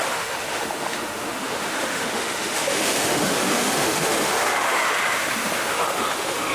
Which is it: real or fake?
fake